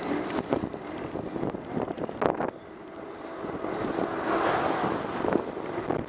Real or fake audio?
real